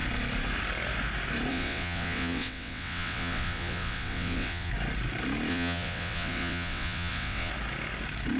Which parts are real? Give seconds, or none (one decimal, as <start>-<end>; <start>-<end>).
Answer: 0.0-1.5; 4.7-5.5; 7.5-8.4